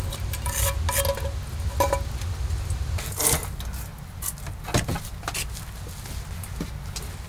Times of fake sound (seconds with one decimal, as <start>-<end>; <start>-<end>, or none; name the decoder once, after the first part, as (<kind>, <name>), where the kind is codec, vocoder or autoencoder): none